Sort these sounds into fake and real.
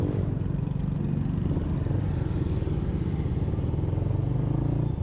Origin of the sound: real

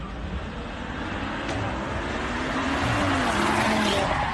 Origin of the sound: real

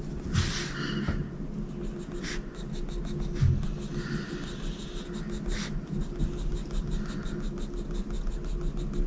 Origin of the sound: real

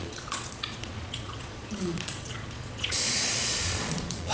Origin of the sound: fake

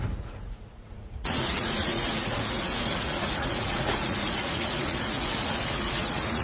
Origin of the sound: fake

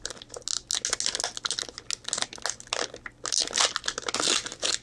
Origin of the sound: real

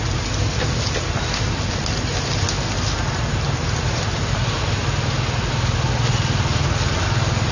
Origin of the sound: real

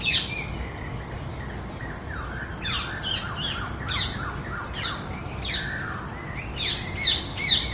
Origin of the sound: real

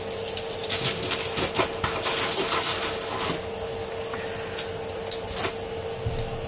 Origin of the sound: real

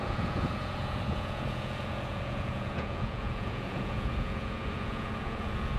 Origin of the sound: fake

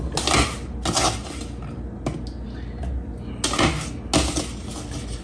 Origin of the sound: real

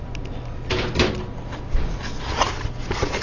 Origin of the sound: real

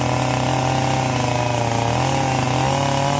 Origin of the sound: real